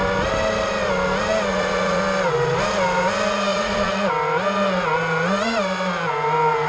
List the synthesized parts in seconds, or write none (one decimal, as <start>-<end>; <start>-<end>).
1.5-2.0; 3.5-4.1